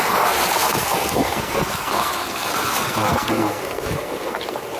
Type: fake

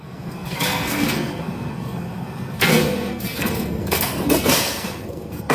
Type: fake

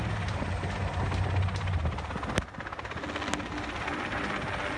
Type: real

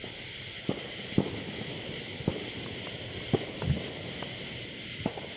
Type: real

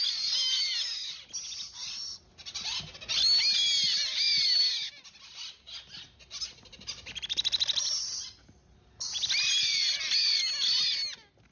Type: real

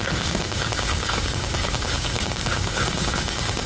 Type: fake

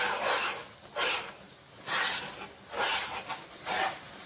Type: real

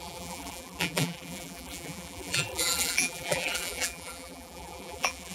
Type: fake